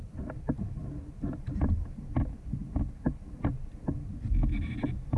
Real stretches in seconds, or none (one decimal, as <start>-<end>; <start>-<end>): 0.0-5.2